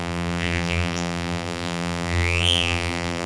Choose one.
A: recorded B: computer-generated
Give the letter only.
B